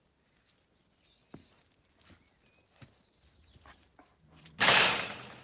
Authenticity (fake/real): real